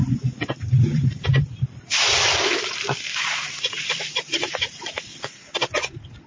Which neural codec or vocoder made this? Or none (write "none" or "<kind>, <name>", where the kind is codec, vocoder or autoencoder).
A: none